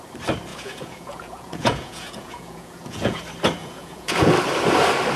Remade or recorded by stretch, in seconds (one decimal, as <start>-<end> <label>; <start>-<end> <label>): 0.0-0.5 recorded; 0.5-3.2 remade; 3.2-3.6 recorded; 3.6-4.3 remade; 4.3-5.2 recorded